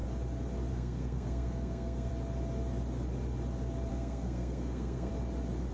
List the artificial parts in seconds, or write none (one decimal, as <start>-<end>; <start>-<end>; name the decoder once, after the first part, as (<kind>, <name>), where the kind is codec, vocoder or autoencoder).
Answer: 0.7-2.1 (codec, SNAC); 3.9-5.1